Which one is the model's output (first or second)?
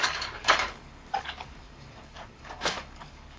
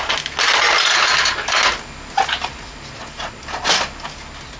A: first